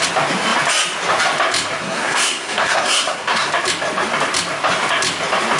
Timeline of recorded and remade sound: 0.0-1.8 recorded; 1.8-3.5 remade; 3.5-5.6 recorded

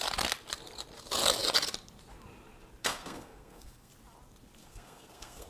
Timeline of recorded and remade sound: 0.0-2.8 recorded; 2.8-3.9 remade; 3.9-4.6 recorded; 4.6-5.5 remade

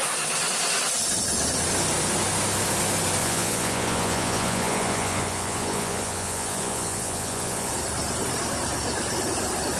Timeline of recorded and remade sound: 0.0-3.2 recorded; 3.2-7.7 remade; 7.7-9.8 recorded

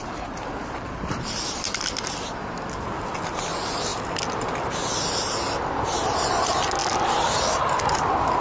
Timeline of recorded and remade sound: 0.0-8.4 recorded

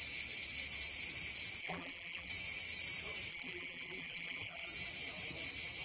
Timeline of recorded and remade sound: 0.0-1.6 recorded; 1.6-2.3 remade; 2.3-3.3 recorded; 3.3-4.7 remade; 4.7-5.8 recorded